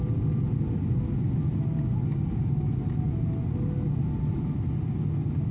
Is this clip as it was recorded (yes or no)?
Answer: yes